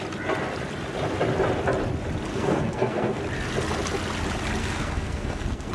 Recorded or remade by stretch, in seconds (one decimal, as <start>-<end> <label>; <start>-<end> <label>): 0.0-2.3 recorded; 2.3-3.2 remade; 3.2-4.6 recorded; 4.6-5.7 remade

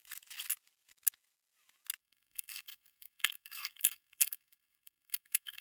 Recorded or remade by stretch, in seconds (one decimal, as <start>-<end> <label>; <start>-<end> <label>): 0.0-2.0 recorded; 2.0-5.6 remade

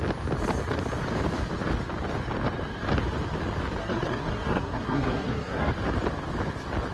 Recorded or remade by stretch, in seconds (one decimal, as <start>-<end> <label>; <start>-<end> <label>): 0.0-3.8 recorded; 3.8-5.7 remade; 5.7-6.9 recorded

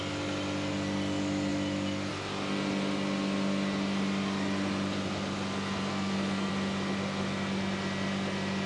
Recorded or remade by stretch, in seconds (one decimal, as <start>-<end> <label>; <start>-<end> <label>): 0.0-5.9 recorded; 5.9-6.5 remade; 6.5-8.7 recorded

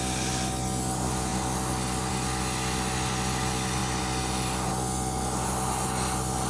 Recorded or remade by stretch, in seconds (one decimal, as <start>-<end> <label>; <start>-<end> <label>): 0.0-6.5 recorded

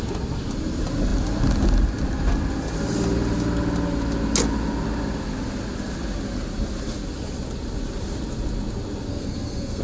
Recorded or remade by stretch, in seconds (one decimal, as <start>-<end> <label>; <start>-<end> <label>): 0.0-9.1 recorded; 9.1-9.8 remade